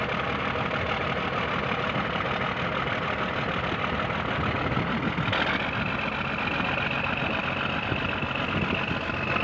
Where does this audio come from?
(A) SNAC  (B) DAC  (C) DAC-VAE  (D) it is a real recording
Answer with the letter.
D